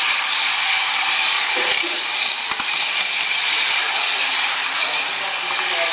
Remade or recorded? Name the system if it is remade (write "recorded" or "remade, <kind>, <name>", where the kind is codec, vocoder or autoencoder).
recorded